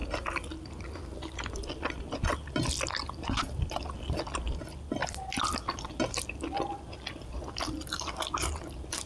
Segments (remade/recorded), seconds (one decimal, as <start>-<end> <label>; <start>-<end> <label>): 0.0-9.1 recorded